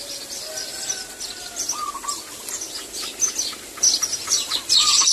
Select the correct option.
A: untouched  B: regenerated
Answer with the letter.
A